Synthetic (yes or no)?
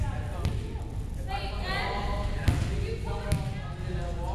no